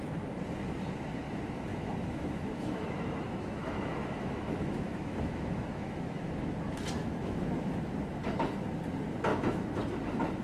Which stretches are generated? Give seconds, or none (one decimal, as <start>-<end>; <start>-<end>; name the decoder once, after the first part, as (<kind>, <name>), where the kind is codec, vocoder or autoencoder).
1.7-6.3 (autoencoder, DAC-VAE); 7.0-7.9; 9.3-9.8